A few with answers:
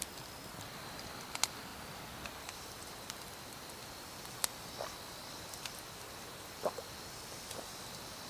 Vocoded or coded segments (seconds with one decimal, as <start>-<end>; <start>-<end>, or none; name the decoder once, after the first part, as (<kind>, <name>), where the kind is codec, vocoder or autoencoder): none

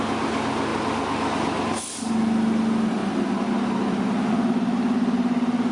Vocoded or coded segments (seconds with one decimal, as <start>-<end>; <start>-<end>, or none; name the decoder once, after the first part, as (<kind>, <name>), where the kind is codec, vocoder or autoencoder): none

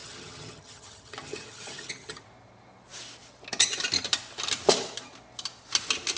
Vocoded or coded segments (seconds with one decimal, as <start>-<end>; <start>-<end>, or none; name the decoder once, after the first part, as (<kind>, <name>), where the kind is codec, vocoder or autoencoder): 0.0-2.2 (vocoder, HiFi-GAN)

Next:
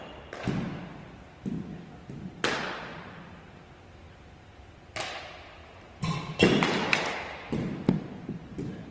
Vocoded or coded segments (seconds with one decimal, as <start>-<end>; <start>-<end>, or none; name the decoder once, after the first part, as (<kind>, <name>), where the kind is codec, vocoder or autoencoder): 2.9-3.6 (vocoder, BigVGAN v2)

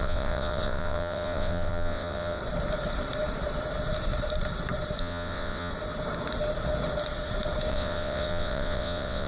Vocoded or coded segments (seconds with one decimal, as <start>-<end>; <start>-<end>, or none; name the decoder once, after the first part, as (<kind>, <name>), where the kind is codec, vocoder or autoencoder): 0.0-2.4 (vocoder, WaveNeXt); 5.0-5.7; 7.7-9.3